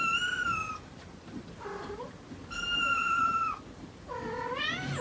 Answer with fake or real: real